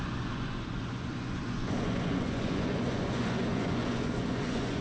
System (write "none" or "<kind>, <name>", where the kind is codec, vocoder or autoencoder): vocoder, Vocos